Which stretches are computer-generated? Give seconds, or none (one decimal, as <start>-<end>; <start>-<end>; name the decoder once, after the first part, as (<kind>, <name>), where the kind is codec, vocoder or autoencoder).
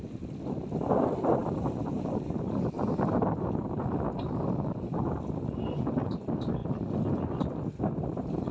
none